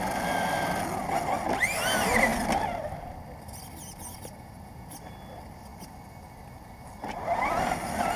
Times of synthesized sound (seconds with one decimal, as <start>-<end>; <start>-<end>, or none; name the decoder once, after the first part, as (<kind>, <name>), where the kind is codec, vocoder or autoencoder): none